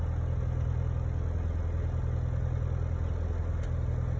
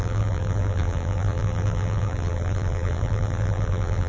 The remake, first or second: second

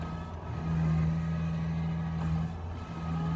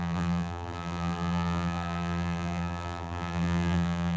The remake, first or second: second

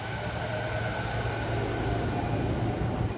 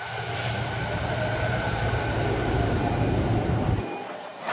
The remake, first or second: second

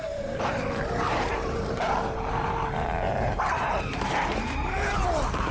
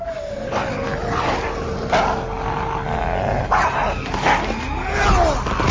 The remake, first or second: first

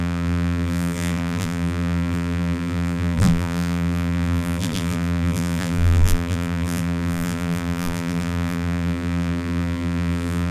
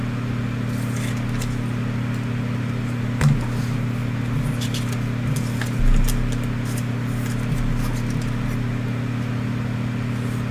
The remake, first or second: first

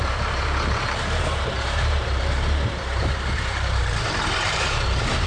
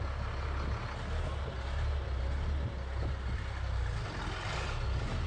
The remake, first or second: first